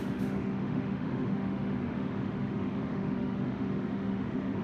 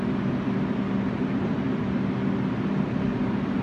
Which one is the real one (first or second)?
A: second